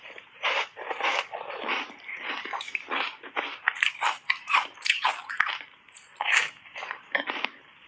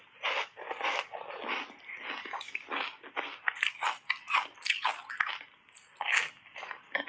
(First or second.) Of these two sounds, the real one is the second